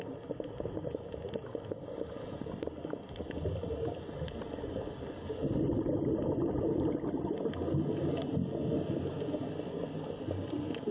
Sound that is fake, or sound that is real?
real